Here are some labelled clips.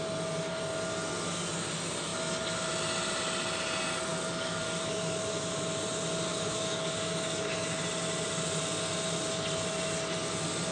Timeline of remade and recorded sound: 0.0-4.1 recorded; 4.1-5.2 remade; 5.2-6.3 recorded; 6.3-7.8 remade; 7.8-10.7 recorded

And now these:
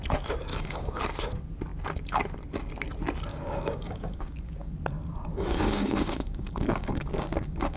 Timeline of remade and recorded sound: 0.0-0.5 recorded; 0.5-1.0 remade; 1.0-3.3 recorded; 3.3-4.7 remade; 4.7-5.3 recorded; 5.3-7.8 remade

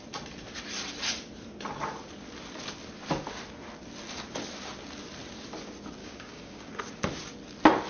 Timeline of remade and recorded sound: 0.0-6.0 recorded; 6.0-6.7 remade; 6.7-7.9 recorded

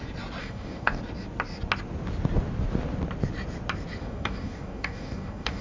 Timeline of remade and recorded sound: 0.0-0.4 recorded; 0.4-1.0 remade; 1.0-4.0 recorded; 4.0-5.6 remade

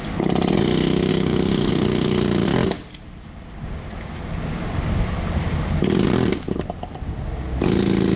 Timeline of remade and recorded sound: 0.0-1.1 recorded; 1.1-1.7 remade; 1.7-8.2 recorded

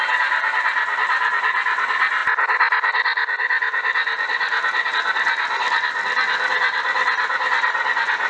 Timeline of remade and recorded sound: 0.0-8.3 recorded

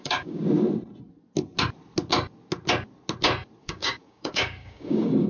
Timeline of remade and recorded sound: 0.0-0.4 remade; 0.4-3.6 recorded; 3.6-5.3 remade

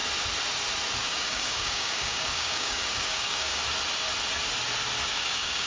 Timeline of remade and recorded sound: 0.0-1.0 recorded; 1.0-3.6 remade; 3.6-5.1 recorded; 5.1-5.7 remade